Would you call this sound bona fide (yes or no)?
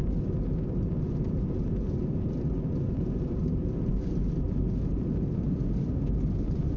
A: yes